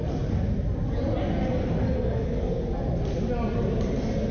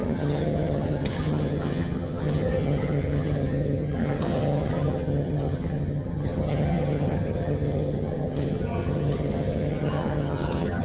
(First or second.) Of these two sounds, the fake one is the second